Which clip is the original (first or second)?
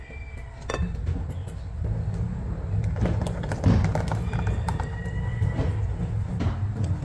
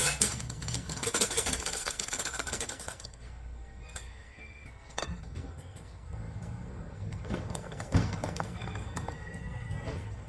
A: first